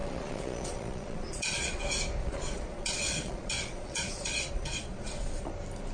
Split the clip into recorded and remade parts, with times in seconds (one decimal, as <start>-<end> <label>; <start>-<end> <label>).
0.0-1.8 remade; 1.8-2.2 recorded; 2.2-5.5 remade; 5.5-5.9 recorded